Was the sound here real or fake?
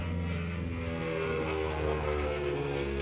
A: fake